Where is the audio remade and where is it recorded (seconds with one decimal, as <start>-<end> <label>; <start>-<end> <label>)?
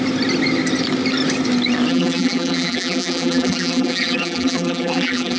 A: 0.0-1.9 recorded; 1.9-5.4 remade